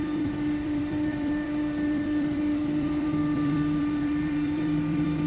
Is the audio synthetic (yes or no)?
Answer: yes